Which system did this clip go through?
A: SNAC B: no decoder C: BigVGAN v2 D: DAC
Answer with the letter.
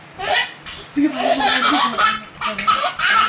B